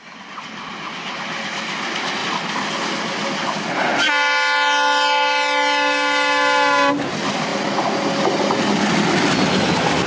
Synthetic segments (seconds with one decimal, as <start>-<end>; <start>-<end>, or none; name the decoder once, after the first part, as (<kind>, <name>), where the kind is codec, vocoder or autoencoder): none